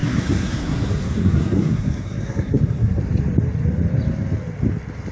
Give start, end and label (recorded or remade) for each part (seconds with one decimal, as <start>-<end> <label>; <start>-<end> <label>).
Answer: 0.0-3.0 remade; 3.0-5.1 recorded

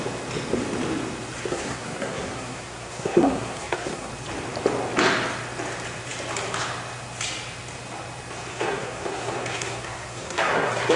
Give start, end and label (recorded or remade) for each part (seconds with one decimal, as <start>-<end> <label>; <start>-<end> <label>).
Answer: 0.0-1.5 recorded; 1.5-4.1 remade; 4.1-8.5 recorded; 8.5-11.0 remade

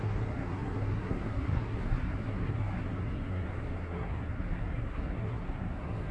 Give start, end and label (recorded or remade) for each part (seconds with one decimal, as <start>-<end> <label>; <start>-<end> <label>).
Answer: 0.0-6.1 remade

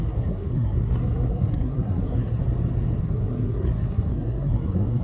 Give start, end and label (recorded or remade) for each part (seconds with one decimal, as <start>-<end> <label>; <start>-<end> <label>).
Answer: 0.0-2.4 remade; 2.4-3.0 recorded; 3.0-5.0 remade

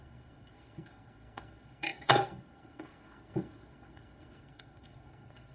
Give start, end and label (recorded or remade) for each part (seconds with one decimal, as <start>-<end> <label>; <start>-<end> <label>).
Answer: 0.0-5.5 remade